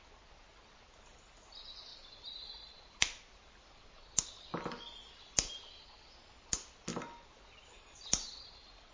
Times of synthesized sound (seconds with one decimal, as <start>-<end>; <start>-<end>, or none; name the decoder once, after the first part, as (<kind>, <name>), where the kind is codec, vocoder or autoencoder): none